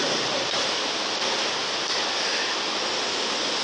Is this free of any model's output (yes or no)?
yes